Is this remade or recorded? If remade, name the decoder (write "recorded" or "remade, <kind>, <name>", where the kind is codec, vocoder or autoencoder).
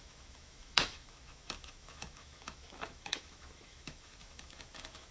remade, autoencoder, DAC-VAE